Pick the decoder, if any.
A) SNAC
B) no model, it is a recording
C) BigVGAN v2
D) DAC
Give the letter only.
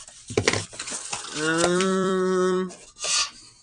C